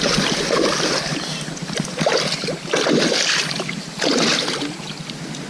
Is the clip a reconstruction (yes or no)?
no